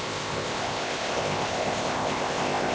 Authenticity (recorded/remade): remade